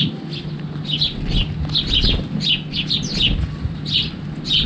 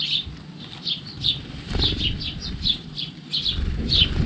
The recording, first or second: first